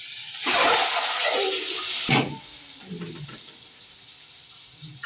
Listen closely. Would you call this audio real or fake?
real